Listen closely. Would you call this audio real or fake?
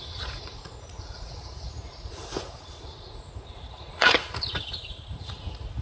fake